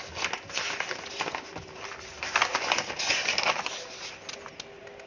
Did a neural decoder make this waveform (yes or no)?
no